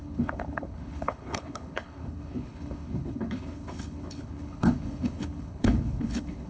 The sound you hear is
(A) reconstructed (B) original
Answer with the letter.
A